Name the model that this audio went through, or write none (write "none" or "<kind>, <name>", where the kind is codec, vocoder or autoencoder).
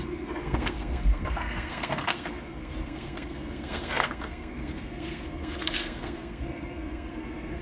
codec, SNAC